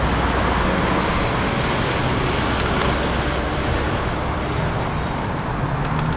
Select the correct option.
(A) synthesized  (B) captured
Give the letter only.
B